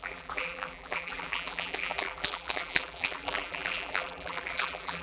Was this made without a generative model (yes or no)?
no